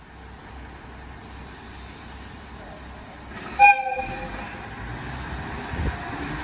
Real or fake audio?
real